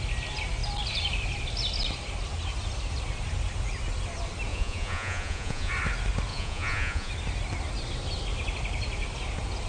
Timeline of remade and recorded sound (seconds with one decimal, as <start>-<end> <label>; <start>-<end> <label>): 0.0-4.5 recorded; 4.5-5.7 remade; 5.7-6.3 recorded; 6.3-7.1 remade; 7.1-9.7 recorded